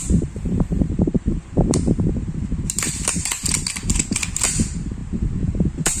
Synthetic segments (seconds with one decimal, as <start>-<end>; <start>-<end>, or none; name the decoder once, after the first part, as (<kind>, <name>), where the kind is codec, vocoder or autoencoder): 0.0-3.6 (vocoder, BigVGAN v2); 5.0-6.0